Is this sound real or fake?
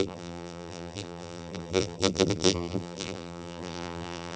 fake